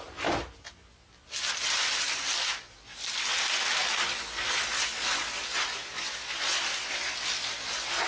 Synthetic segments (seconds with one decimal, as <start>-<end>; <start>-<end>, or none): none

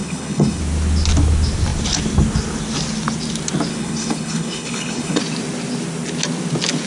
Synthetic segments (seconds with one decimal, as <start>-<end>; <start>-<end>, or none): 0.0-0.6; 3.7-5.2

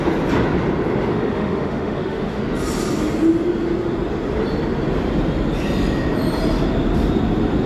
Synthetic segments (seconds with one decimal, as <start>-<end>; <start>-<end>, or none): 1.1-2.4

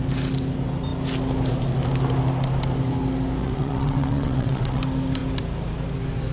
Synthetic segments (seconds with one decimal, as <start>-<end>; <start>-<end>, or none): 3.4-4.8